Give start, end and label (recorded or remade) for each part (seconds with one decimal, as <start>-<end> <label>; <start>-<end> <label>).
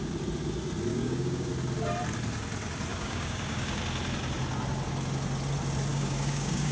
0.0-0.9 recorded; 0.9-1.5 remade; 1.5-2.9 recorded; 2.9-3.8 remade; 3.8-5.9 recorded; 5.9-6.7 remade